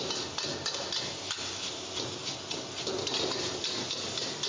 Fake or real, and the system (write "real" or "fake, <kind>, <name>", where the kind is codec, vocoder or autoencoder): real